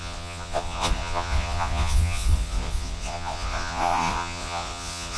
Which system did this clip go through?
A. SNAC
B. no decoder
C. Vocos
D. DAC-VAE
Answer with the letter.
C